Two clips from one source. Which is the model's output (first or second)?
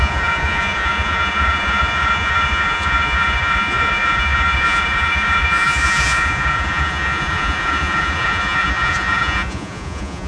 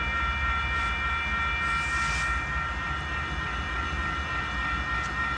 first